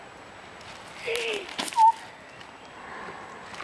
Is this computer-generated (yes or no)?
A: no